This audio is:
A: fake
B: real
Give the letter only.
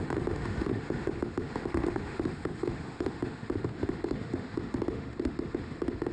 A